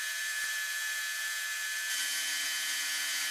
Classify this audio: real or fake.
fake